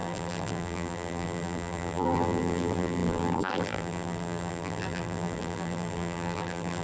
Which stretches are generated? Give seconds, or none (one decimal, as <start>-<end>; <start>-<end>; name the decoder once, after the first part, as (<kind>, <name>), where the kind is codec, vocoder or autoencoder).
0.0-6.8 (vocoder, BigVGAN v2)